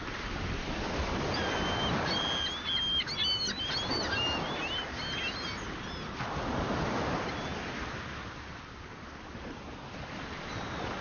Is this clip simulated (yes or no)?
no